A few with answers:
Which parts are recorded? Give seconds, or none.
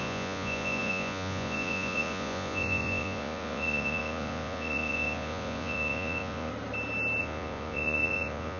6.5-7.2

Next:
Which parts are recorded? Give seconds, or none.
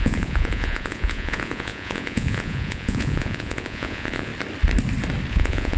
4.3-5.3